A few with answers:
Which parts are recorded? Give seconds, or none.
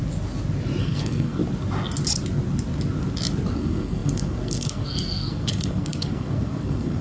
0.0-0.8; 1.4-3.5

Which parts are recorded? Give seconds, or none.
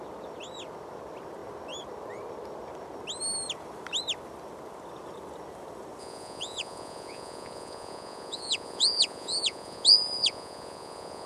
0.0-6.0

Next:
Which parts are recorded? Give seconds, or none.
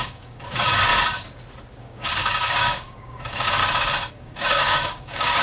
0.9-1.8; 3.6-4.1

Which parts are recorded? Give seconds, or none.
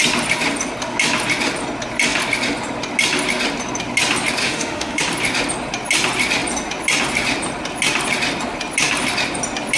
0.0-4.4; 5.0-9.8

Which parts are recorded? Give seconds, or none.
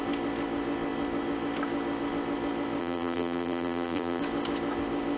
0.0-2.8; 4.2-5.2